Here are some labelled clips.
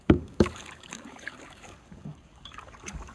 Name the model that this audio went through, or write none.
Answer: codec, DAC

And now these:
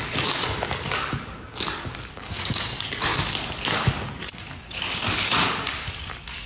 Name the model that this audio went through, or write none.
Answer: codec, DAC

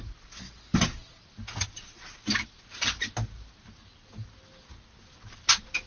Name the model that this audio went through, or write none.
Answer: none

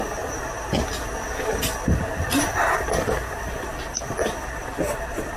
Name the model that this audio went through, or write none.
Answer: none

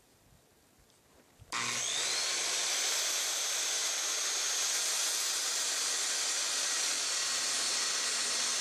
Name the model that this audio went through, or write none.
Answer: none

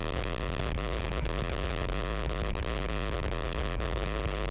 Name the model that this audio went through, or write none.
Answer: autoencoder, DAC-VAE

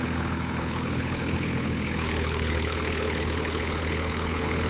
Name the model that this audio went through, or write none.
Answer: codec, HILCodec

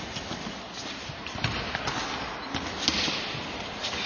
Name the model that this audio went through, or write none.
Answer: none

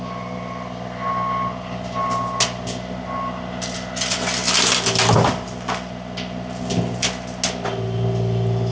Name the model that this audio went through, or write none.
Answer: none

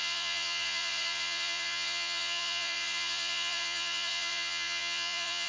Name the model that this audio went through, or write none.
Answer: vocoder, Vocos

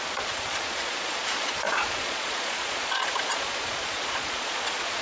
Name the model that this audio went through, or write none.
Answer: vocoder, Vocos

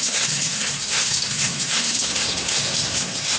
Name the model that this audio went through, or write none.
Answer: codec, SNAC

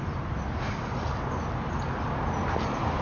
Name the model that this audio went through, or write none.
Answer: none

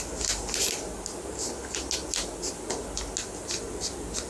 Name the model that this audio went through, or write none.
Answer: none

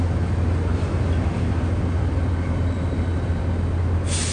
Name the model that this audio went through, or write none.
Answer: none